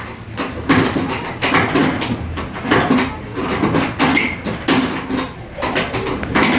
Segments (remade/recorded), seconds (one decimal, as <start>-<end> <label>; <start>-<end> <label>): 0.0-6.6 recorded